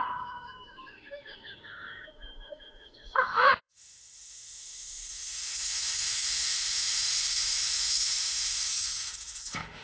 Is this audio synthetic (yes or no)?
yes